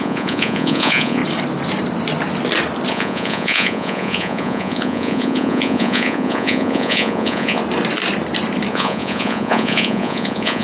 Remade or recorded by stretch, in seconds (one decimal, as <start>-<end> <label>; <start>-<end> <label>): 0.0-1.2 remade; 1.2-2.9 recorded; 2.9-7.6 remade; 7.6-8.7 recorded; 8.7-10.6 remade